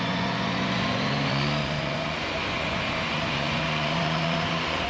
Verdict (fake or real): fake